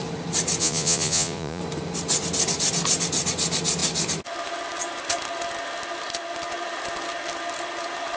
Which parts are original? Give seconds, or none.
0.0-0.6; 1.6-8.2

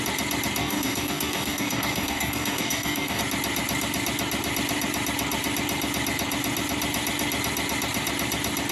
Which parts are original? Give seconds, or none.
0.0-0.6; 3.2-8.7

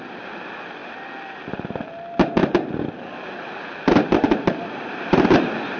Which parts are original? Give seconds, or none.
0.0-5.8

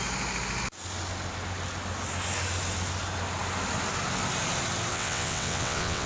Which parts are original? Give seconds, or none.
0.0-4.9

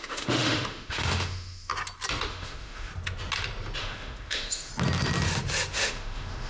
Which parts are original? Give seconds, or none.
1.7-2.3; 2.9-3.8; 4.7-5.7

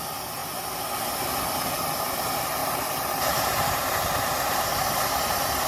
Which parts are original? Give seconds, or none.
0.0-2.6